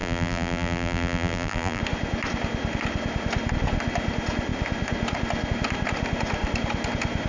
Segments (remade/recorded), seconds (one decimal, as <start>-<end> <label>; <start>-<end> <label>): 0.0-1.8 remade; 1.8-7.3 recorded